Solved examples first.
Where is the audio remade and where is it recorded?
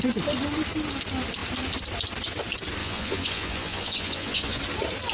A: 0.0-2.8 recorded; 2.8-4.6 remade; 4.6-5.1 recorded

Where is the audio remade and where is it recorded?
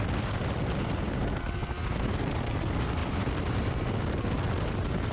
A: 0.0-5.1 recorded